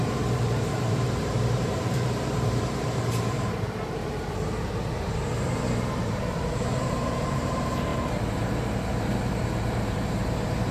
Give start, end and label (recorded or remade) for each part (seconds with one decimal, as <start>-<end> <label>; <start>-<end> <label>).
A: 0.0-10.7 remade